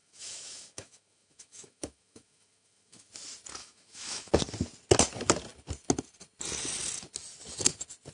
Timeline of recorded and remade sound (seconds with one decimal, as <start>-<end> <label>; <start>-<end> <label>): 0.0-3.1 remade; 3.1-3.6 recorded; 3.6-4.3 remade; 4.3-8.1 recorded